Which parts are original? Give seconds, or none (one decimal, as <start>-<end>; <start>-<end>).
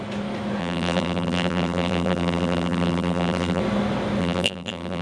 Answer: 0.0-0.6; 3.6-4.2